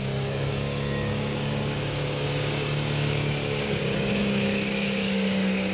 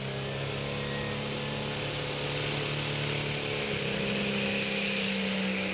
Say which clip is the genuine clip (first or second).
second